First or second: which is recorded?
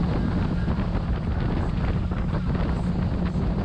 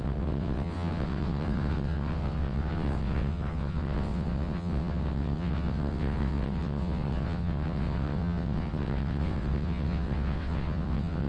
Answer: first